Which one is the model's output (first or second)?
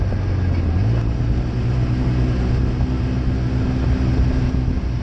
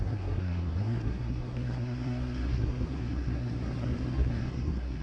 second